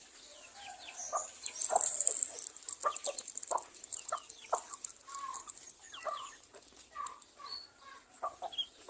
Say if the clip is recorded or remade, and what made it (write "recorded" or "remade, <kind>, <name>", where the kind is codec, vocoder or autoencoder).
recorded